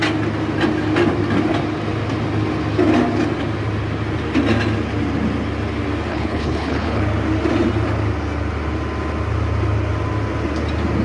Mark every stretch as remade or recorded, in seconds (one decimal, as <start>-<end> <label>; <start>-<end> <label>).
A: 0.0-6.1 recorded; 6.1-7.0 remade; 7.0-11.0 recorded

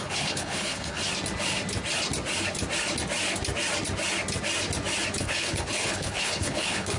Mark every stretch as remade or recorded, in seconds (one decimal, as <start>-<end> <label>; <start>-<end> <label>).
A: 0.0-1.0 remade; 1.0-5.2 recorded; 5.2-7.0 remade

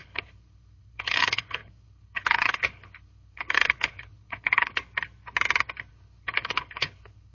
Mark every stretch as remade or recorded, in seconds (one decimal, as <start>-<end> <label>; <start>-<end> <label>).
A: 0.0-4.8 remade; 4.8-5.9 recorded; 5.9-7.3 remade

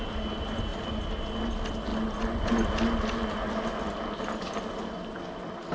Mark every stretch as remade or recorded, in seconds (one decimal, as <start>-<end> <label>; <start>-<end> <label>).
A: 0.0-5.7 recorded

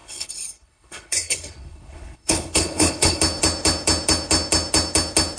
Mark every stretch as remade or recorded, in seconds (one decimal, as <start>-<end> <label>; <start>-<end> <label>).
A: 0.0-3.2 remade; 3.2-5.4 recorded